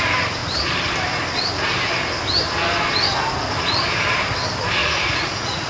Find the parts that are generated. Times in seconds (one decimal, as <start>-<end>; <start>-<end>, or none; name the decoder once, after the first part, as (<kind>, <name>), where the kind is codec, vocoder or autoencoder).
4.8-5.7 (vocoder, Vocos)